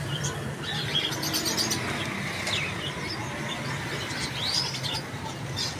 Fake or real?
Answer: real